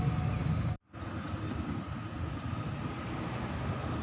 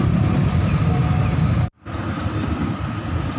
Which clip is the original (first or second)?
first